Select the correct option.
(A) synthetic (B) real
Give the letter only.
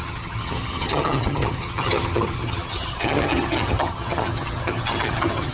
A